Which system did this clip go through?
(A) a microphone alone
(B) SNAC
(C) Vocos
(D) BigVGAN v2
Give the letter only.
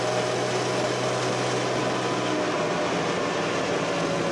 A